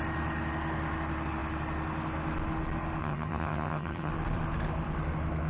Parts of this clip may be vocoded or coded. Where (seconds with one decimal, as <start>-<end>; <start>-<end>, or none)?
3.0-4.1